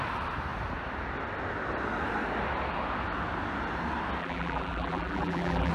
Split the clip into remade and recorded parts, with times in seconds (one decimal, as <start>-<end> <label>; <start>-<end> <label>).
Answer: 0.0-4.2 recorded; 4.2-5.7 remade